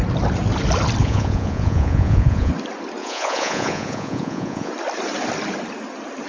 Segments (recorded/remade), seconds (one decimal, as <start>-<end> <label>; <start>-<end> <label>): 0.0-1.0 recorded; 1.0-2.5 remade; 2.5-3.0 recorded; 3.0-4.7 remade; 4.7-6.3 recorded